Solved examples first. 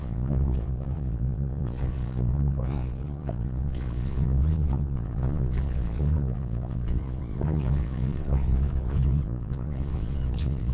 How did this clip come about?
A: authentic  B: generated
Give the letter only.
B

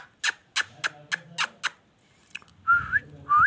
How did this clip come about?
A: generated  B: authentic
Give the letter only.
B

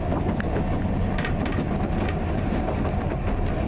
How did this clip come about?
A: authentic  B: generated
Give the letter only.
A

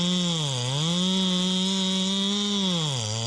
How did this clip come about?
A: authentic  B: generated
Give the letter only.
A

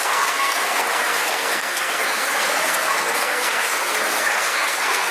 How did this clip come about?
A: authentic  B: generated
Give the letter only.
B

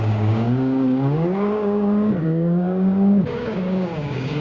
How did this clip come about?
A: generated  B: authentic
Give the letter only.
A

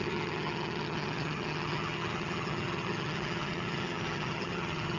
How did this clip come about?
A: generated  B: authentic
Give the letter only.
A